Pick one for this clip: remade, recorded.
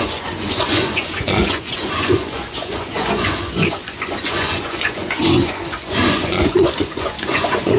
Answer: remade